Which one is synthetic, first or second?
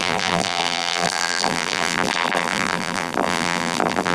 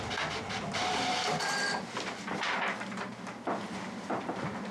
first